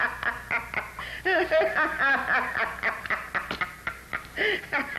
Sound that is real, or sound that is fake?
real